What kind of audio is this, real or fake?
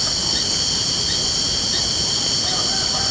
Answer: real